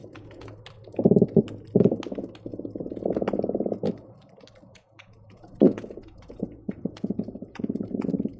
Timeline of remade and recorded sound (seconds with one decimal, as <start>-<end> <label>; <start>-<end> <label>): 0.0-0.5 remade; 0.5-2.5 recorded; 2.5-3.1 remade; 3.1-4.7 recorded; 4.7-7.6 remade; 7.6-8.4 recorded